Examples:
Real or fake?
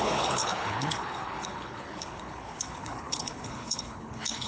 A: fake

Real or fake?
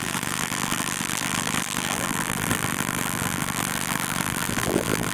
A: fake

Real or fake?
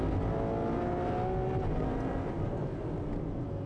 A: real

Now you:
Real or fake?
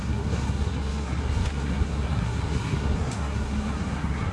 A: fake